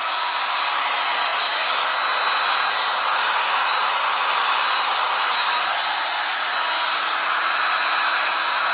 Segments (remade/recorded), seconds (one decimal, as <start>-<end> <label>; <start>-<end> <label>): 0.0-3.1 recorded; 3.1-3.7 remade; 3.7-8.7 recorded